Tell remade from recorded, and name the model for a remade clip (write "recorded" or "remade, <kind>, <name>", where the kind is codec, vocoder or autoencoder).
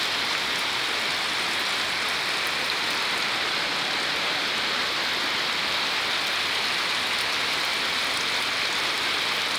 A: recorded